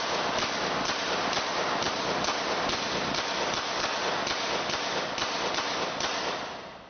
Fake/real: real